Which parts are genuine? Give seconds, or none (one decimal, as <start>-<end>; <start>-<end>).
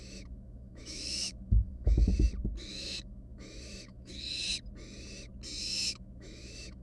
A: 2.1-2.7; 4.1-5.6